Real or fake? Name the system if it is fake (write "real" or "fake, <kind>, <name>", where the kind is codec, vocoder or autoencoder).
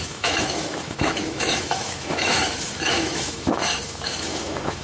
fake, autoencoder, DAC-VAE